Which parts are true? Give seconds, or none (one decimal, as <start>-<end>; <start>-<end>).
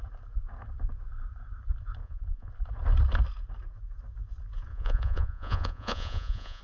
0.0-2.0; 2.5-4.7